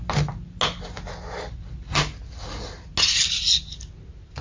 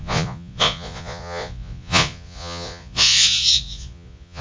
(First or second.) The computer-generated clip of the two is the second